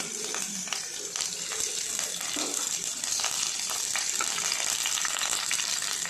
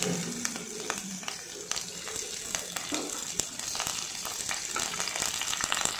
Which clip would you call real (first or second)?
second